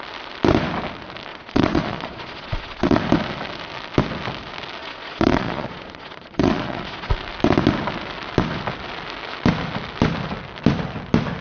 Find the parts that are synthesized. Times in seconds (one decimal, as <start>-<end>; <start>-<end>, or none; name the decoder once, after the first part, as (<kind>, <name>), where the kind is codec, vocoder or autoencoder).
1.3-3.0 (vocoder, Vocos); 4.8-7.1